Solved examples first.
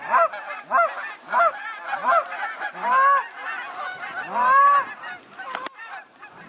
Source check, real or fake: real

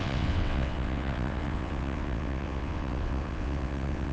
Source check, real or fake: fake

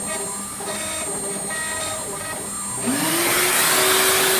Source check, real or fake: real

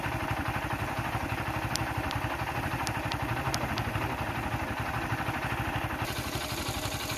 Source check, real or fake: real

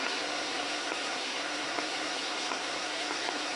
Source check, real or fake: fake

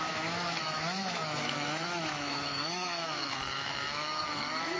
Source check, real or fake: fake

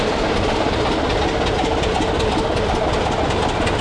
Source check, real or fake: real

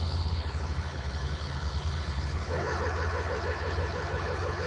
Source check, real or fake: fake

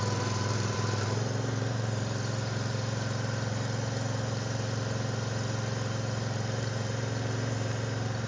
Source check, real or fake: fake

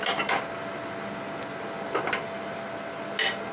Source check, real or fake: real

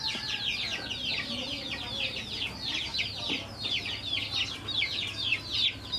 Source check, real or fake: real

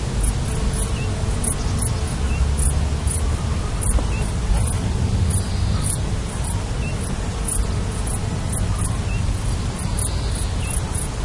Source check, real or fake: real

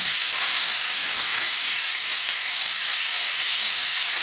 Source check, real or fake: fake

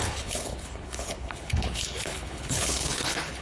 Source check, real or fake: fake